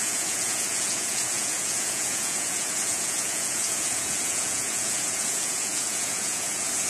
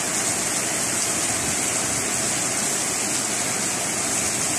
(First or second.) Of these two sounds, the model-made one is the first